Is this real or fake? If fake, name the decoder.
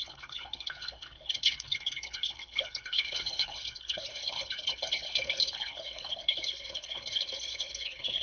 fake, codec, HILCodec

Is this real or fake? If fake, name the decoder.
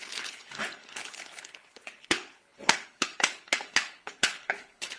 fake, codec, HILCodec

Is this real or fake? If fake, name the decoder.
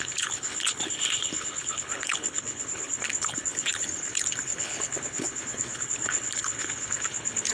fake, codec, HILCodec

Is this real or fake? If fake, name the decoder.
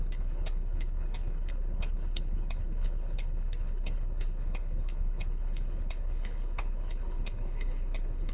fake, codec, HILCodec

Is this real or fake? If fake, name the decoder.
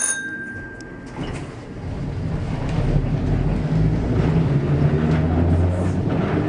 real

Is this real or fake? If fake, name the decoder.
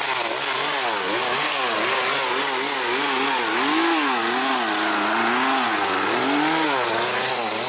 real